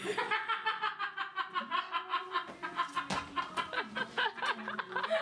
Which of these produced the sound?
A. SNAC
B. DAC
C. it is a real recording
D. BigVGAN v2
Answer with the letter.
C